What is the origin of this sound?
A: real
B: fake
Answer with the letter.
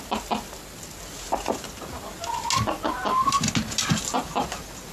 A